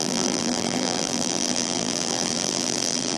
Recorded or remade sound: remade